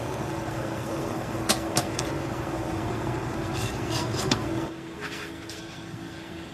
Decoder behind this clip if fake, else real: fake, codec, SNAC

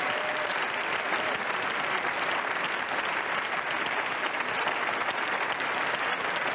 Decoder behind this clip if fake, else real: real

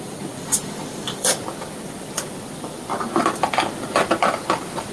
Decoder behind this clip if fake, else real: fake, vocoder, BigVGAN v2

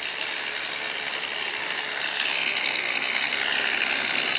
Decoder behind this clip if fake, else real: real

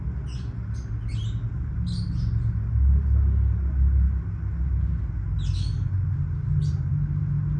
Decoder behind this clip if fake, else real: real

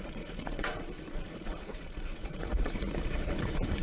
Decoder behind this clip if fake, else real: fake, vocoder, Vocos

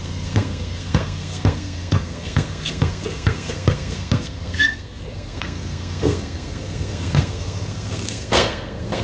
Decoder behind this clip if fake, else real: fake, codec, SNAC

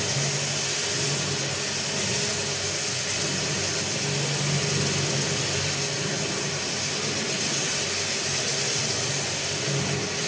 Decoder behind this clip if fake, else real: real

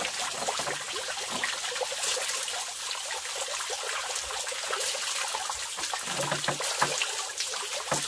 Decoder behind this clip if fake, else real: real